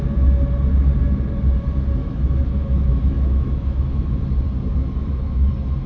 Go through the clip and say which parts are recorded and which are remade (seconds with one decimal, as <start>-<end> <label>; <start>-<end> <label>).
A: 0.0-2.0 recorded; 2.0-4.2 remade; 4.2-4.7 recorded; 4.7-5.5 remade; 5.5-5.9 recorded